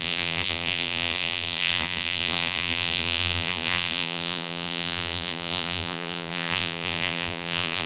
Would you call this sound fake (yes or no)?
yes